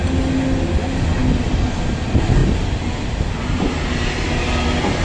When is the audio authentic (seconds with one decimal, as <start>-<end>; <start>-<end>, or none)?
0.0-5.0